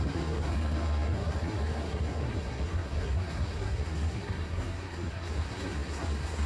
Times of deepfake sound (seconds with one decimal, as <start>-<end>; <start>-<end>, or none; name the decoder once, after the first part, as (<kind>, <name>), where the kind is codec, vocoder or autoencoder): 0.0-6.5 (codec, SNAC)